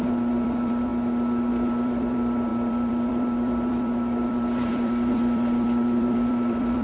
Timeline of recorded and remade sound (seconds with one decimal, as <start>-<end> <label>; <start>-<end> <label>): 0.0-0.9 remade; 0.9-1.5 recorded; 1.5-6.8 remade